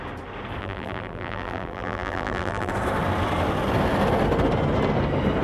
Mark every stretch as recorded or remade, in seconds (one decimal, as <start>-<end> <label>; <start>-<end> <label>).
0.0-0.6 recorded; 0.6-2.7 remade; 2.7-5.4 recorded

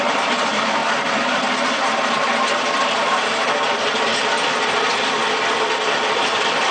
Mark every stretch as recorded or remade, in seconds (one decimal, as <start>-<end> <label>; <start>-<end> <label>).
0.0-4.1 remade; 4.1-4.7 recorded; 4.7-5.2 remade; 5.2-6.1 recorded; 6.1-6.7 remade

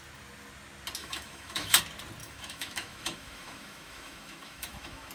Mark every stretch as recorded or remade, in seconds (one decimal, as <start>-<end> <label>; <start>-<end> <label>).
0.0-1.0 recorded; 1.0-1.8 remade; 1.8-2.2 recorded; 2.2-5.1 remade

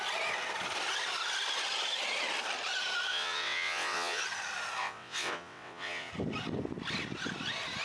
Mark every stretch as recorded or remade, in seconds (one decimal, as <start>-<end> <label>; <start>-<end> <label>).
0.0-3.1 recorded; 3.1-4.2 remade; 4.2-4.8 recorded; 4.8-6.1 remade; 6.1-7.8 recorded

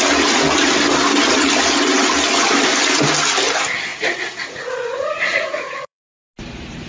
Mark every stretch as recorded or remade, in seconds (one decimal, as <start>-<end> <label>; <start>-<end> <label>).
0.0-3.9 recorded; 3.9-6.1 remade; 6.1-6.9 recorded

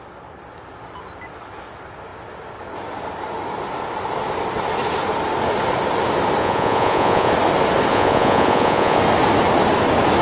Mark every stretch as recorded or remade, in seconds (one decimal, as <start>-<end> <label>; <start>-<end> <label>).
0.0-6.4 recorded; 6.4-7.3 remade; 7.3-7.9 recorded; 7.9-9.0 remade; 9.0-10.2 recorded

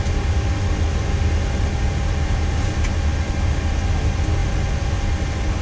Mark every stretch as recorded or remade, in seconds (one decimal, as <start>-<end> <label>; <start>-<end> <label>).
0.0-5.6 recorded

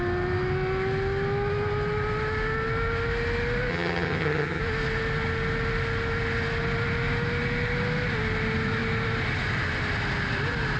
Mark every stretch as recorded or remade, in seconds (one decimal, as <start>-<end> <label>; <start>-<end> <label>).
0.0-3.7 recorded; 3.7-4.6 remade; 4.6-10.8 recorded